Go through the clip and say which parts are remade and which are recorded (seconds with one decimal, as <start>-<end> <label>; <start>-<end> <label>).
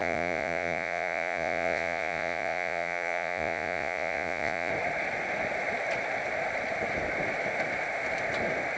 0.0-4.7 remade; 4.7-8.8 recorded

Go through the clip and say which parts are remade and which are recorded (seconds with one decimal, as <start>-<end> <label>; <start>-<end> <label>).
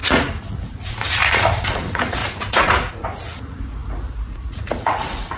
0.0-5.4 remade